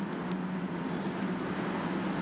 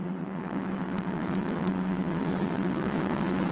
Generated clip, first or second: second